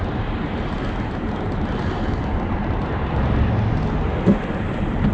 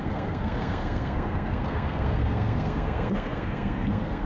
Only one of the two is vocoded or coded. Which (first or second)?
second